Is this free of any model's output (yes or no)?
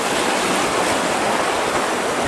yes